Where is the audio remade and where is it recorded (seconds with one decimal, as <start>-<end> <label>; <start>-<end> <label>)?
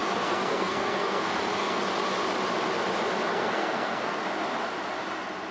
0.0-1.8 remade; 1.8-3.3 recorded; 3.3-4.2 remade; 4.2-5.5 recorded